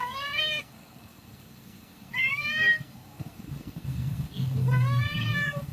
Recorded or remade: remade